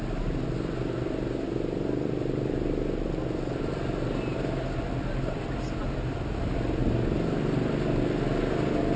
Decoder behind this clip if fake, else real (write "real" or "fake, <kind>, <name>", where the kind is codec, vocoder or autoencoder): real